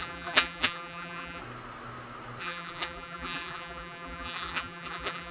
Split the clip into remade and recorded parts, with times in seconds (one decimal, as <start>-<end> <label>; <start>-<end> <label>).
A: 0.0-1.4 remade; 1.4-2.4 recorded; 2.4-5.3 remade